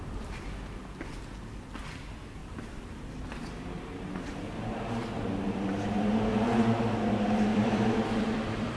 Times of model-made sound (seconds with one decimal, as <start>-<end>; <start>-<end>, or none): 2.4-3.2; 7.5-8.8